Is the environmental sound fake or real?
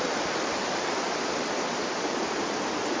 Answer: real